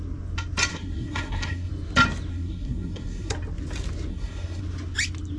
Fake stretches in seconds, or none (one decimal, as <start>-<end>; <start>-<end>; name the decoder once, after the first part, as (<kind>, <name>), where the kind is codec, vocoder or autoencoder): 0.7-1.7 (codec, SNAC); 2.3-3.3; 4.1-4.6

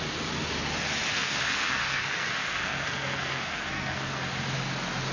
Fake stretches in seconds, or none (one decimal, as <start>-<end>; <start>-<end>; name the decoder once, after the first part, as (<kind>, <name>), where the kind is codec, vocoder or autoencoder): 1.1-4.2 (codec, SNAC)

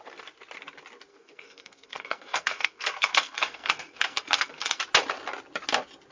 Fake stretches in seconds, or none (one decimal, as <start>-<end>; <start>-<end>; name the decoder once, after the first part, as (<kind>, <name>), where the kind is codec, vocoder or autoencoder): 1.1-4.8 (codec, SNAC)

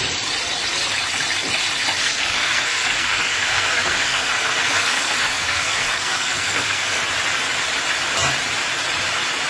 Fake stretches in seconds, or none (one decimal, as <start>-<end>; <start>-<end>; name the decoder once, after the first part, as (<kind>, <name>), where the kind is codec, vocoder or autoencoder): 2.0-7.0 (codec, SNAC)

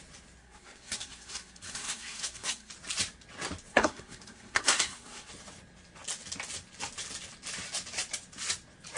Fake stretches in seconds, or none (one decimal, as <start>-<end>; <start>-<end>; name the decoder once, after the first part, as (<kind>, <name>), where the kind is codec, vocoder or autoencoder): 0.4-2.7 (codec, SNAC); 3.7-5.3

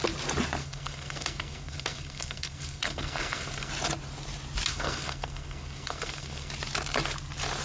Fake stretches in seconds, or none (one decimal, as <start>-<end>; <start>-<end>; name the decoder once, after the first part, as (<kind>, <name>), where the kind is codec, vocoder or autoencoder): 0.6-3.7 (codec, SNAC); 4.7-6.5

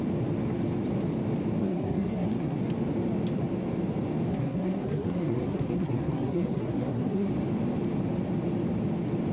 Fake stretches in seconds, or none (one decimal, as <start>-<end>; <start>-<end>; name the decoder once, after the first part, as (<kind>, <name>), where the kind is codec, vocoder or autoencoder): 1.6-2.6 (codec, SNAC); 4.3-7.3

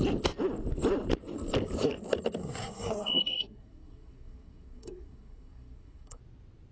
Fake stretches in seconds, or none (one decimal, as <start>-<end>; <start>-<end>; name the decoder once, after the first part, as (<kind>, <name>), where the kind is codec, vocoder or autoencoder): 2.4-6.2 (codec, SNAC)